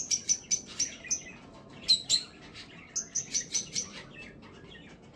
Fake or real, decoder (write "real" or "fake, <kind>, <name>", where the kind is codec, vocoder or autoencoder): real